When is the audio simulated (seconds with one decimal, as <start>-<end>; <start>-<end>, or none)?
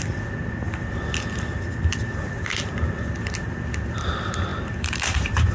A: 2.1-2.7; 4.5-5.5